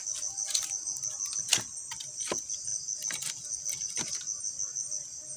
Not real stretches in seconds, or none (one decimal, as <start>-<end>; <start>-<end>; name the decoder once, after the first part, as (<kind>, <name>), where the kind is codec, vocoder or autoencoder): none